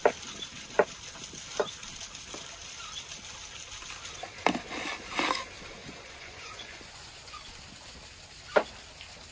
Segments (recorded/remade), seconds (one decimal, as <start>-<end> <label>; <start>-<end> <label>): 0.0-5.8 recorded; 5.8-7.4 remade; 7.4-9.3 recorded